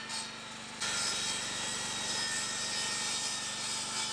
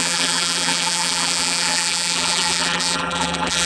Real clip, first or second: first